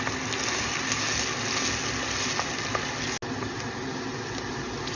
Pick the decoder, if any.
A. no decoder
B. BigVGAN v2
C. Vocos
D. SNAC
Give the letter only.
A